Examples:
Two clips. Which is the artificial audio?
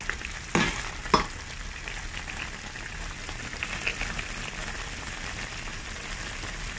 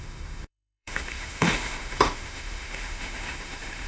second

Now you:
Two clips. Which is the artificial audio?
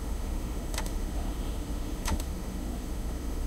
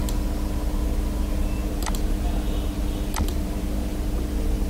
first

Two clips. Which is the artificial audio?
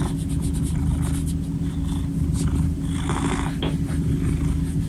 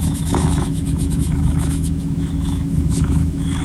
second